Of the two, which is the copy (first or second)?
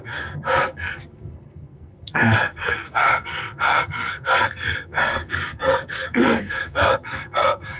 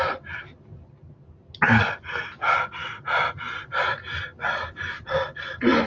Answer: first